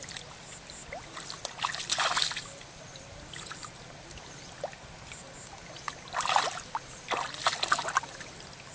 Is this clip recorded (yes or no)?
yes